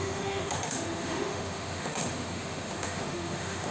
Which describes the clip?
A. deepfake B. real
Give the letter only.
A